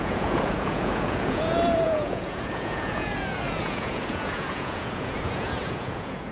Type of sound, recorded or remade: remade